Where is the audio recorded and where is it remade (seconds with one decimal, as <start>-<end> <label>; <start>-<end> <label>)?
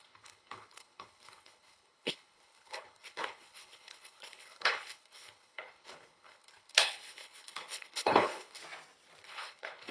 0.0-8.6 remade; 8.6-9.2 recorded; 9.2-9.9 remade